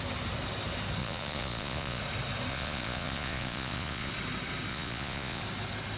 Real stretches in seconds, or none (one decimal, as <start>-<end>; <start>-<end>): 0.0-1.0; 2.0-2.5; 4.1-4.7; 5.4-6.0